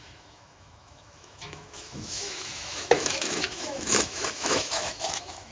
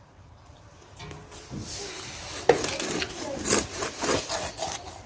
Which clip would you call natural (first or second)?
second